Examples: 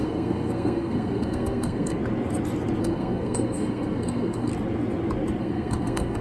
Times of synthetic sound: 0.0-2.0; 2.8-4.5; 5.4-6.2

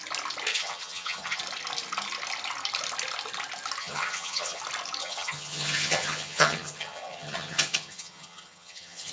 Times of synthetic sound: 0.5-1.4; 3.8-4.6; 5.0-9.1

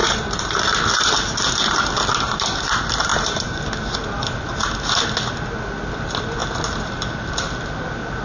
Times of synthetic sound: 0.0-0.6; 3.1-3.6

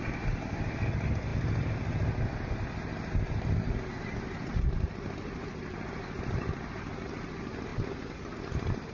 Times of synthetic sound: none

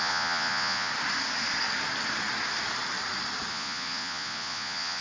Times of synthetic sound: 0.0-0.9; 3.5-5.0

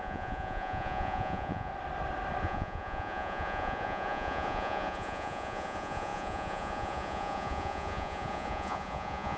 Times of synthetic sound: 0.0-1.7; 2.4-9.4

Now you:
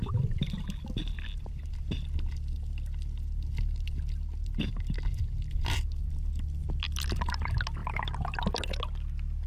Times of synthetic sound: 0.0-0.5; 7.8-8.5